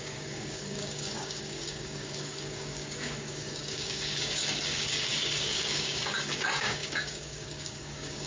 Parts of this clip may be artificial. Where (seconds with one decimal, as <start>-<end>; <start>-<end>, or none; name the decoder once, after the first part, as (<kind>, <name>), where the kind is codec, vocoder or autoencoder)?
0.0-8.3 (codec, DAC)